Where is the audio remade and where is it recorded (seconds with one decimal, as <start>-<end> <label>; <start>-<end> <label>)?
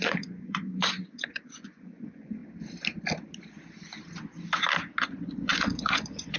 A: 0.0-2.4 remade; 2.4-5.2 recorded; 5.2-6.4 remade